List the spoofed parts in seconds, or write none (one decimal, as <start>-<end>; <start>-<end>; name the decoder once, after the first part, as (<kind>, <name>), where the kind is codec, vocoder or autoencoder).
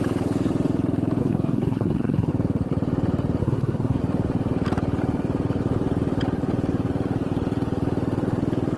1.2-2.3 (codec, SNAC); 3.4-4.0